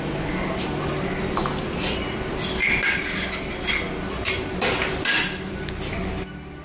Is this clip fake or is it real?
real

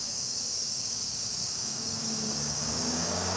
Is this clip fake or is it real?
fake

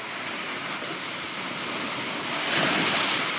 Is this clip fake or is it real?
real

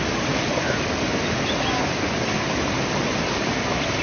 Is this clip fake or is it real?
real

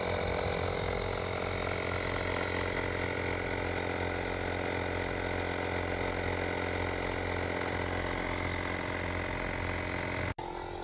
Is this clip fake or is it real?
real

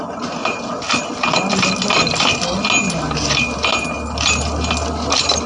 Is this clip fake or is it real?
real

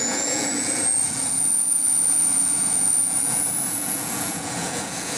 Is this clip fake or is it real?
fake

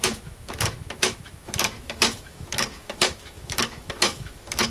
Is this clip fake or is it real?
fake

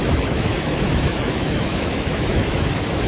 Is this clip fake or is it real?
fake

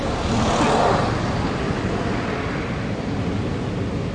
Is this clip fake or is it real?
real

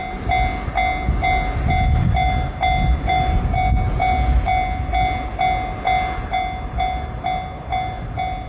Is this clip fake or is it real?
real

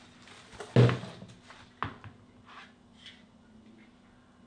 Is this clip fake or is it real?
real